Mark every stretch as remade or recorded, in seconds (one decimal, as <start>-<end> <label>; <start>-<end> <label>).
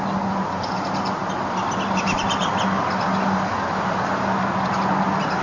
0.0-5.4 remade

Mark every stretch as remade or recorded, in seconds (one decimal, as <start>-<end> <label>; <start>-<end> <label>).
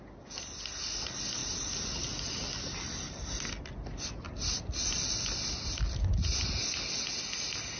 0.0-1.4 recorded; 1.4-6.1 remade; 6.1-7.8 recorded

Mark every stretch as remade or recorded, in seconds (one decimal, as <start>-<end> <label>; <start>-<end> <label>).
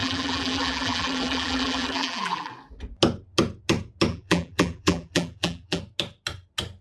0.0-2.5 remade; 2.5-4.1 recorded; 4.1-5.8 remade; 5.8-6.8 recorded